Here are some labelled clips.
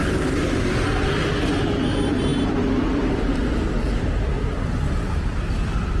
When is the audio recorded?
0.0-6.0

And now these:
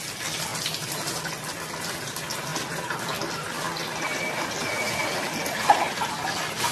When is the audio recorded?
0.0-0.5; 1.3-2.5; 5.1-6.7

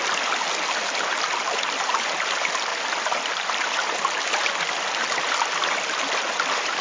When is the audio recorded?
0.0-6.8

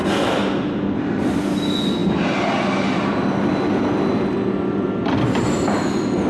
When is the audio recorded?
0.0-6.3

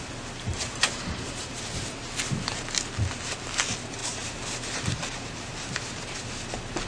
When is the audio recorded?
0.0-0.5; 1.9-4.0; 6.3-6.9

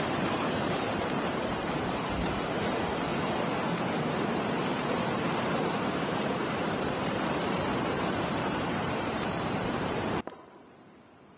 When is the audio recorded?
3.1-4.0

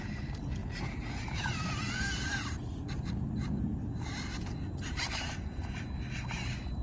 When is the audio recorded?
0.0-0.6; 2.4-3.4; 5.0-6.8